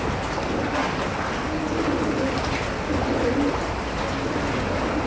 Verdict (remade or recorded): recorded